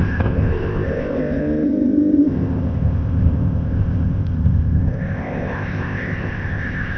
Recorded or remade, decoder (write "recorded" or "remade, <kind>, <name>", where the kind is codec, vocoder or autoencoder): remade, codec, ZipCodec